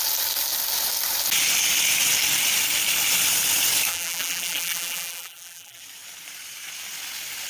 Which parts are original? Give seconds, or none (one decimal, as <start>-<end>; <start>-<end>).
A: 0.0-3.9; 5.8-7.5